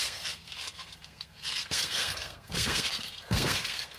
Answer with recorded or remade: remade